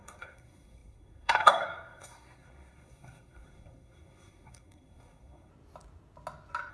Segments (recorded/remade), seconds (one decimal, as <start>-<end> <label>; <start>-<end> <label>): 0.0-5.5 remade; 5.5-6.7 recorded